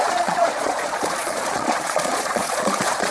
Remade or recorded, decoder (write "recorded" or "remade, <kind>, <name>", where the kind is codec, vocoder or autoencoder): remade, vocoder, Vocos